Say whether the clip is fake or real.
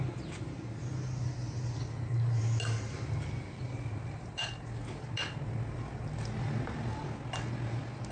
real